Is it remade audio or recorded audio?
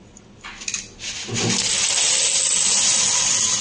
recorded